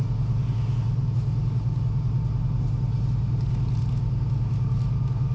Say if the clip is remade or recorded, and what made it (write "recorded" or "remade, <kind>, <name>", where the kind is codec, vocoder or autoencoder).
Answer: recorded